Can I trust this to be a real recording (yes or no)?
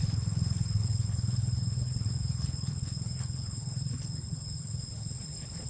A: no